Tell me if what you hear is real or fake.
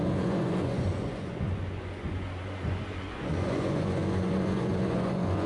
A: fake